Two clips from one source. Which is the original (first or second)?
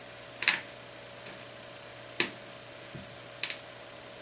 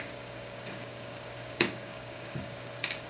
first